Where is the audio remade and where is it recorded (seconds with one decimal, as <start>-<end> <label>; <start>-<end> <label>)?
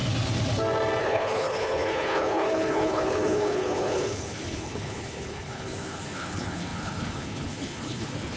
0.0-1.0 recorded; 1.0-8.4 remade